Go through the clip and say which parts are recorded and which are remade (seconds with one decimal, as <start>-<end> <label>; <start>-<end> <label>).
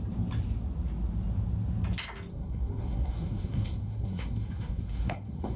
0.0-2.3 recorded; 2.3-5.6 remade